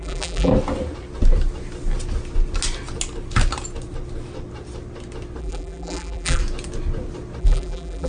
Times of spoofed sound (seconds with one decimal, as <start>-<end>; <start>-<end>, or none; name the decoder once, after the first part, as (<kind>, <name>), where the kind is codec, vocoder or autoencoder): 0.0-0.5 (vocoder, BigVGAN v2); 5.4-6.4; 7.4-8.1